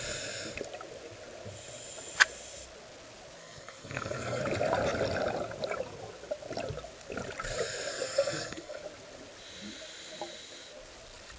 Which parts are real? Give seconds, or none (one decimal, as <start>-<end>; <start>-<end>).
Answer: 0.0-3.4; 4.4-7.9; 8.8-11.4